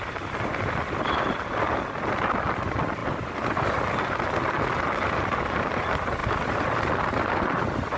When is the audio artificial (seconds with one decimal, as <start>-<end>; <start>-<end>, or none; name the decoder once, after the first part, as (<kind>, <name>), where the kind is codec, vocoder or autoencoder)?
6.2-6.9 (vocoder, BigVGAN v2)